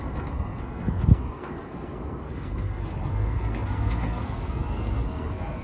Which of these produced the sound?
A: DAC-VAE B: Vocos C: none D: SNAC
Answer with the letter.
D